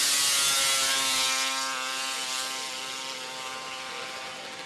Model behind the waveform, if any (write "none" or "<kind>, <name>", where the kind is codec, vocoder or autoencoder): none